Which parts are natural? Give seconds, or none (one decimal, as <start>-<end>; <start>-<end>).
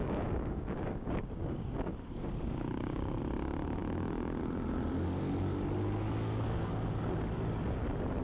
3.2-8.2